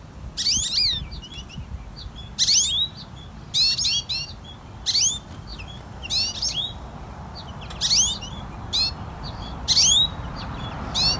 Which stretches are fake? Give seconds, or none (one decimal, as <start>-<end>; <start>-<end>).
none